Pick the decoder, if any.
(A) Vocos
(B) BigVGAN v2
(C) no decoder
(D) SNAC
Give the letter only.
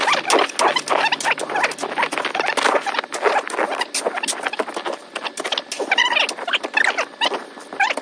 C